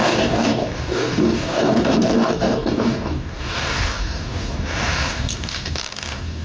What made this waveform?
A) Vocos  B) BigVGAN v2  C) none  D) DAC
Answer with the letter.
D